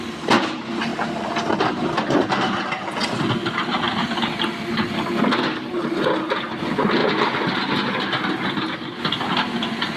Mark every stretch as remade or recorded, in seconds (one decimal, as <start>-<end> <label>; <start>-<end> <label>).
0.0-10.0 recorded